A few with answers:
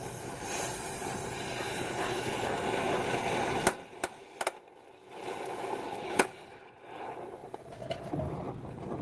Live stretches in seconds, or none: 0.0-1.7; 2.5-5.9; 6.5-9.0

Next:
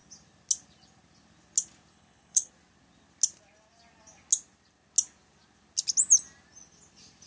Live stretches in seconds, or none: 0.0-1.9; 2.5-7.3

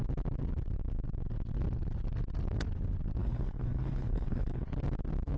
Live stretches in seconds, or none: 0.0-3.2; 4.7-5.4

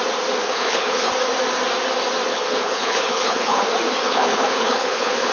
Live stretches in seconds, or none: 0.0-0.4; 1.1-2.3; 3.6-4.0

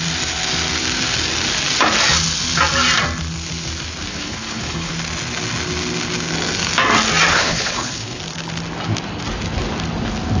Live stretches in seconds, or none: 0.0-4.1; 4.9-7.3; 8.2-10.4